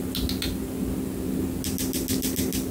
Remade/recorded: recorded